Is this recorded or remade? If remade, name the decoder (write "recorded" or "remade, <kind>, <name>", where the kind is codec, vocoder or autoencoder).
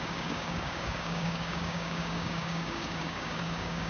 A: remade, codec, DAC